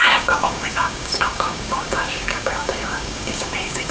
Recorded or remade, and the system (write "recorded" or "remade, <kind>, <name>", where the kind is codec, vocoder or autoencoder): remade, codec, DAC